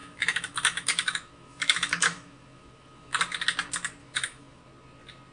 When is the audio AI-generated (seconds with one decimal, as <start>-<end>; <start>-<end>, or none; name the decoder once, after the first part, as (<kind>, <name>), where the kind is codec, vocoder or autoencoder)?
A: 0.0-3.2 (autoencoder, DAC-VAE); 4.0-4.6